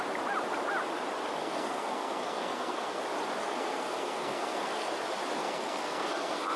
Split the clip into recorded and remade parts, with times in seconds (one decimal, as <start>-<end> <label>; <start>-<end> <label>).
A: 0.0-1.4 recorded; 1.4-3.0 remade; 3.0-3.4 recorded; 3.4-4.9 remade; 4.9-5.4 recorded; 5.4-6.6 remade